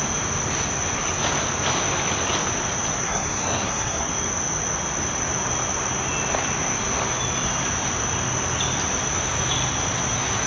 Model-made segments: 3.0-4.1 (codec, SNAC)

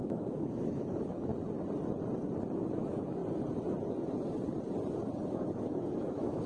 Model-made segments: 0.0-1.3 (autoencoder, DAC-VAE); 2.7-3.2; 5.2-6.5

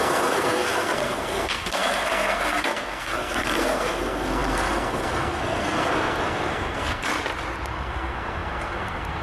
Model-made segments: 0.0-7.1 (codec, SNAC); 7.7-9.2

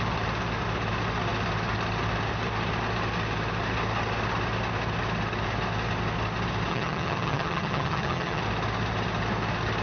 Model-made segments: 6.7-8.4 (vocoder, HiFi-GAN)

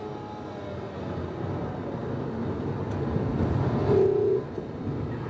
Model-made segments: none

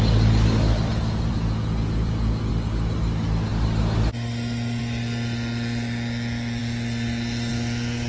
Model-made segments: 0.9-2.5 (vocoder, Vocos)

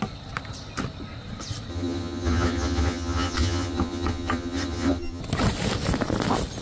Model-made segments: 1.7-5.2 (vocoder, HiFi-GAN)

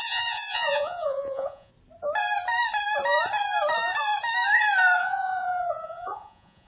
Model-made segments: 0.0-1.7 (vocoder, Vocos); 5.0-6.7